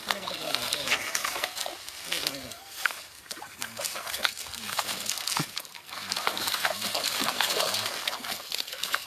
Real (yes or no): no